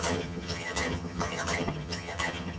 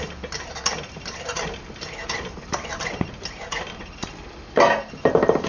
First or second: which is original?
second